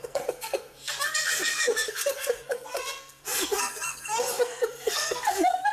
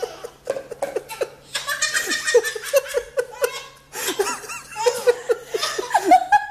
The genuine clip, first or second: second